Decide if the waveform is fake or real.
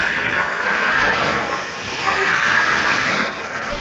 fake